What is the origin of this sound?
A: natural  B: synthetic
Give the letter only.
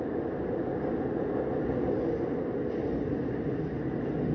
A